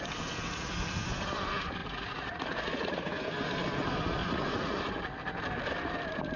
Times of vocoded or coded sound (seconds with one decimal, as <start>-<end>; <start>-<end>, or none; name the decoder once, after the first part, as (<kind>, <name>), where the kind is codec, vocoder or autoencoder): 1.8-3.2 (vocoder, Vocos); 4.2-4.7